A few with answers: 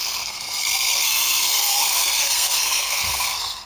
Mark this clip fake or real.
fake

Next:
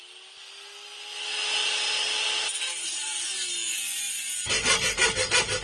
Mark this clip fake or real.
real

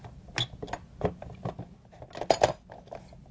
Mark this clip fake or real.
real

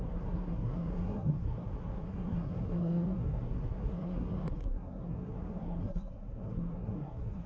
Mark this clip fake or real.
fake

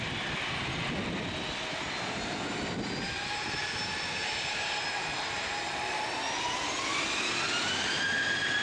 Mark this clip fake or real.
real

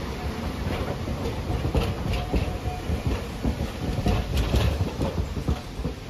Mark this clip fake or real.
fake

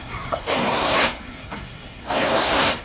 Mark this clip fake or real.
fake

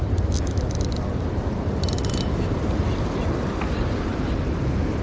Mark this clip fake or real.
real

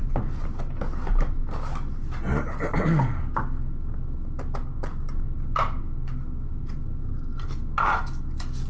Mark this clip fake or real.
real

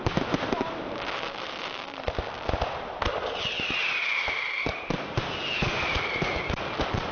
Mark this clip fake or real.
real